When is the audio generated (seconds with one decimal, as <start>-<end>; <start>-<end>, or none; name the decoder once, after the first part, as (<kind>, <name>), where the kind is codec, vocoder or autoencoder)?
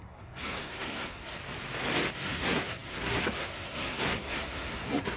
0.0-1.4 (codec, SNAC); 2.1-5.2